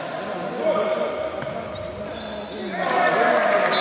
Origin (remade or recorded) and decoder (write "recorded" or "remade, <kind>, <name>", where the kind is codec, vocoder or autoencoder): recorded